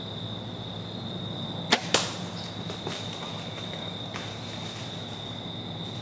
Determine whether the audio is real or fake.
real